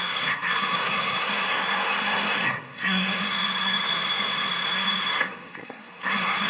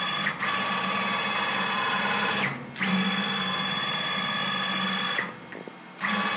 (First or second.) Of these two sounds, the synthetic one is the first